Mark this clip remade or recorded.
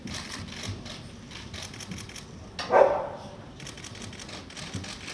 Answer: recorded